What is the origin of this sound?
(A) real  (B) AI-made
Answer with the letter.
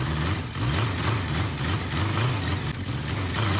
A